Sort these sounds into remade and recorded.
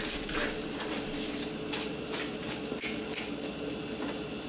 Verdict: recorded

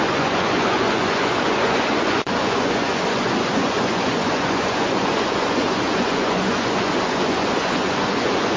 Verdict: remade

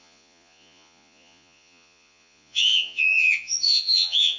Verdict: remade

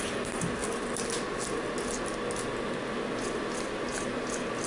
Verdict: recorded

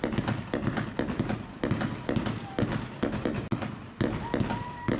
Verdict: recorded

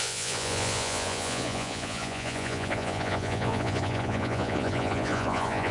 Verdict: remade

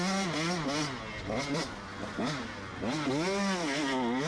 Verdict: recorded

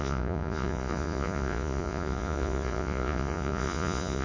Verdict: remade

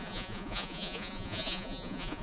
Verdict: remade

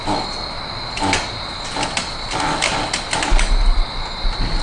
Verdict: recorded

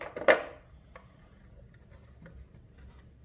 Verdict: recorded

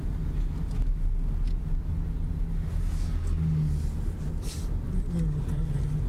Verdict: recorded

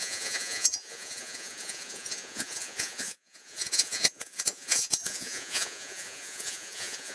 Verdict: remade